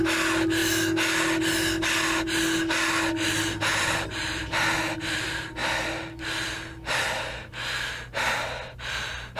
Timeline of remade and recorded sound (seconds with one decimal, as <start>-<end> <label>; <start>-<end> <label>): 0.0-3.7 recorded; 3.7-4.5 remade; 4.5-9.4 recorded